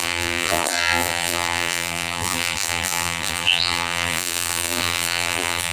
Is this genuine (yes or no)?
no